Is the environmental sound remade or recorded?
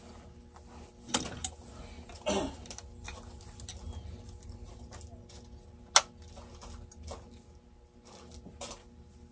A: recorded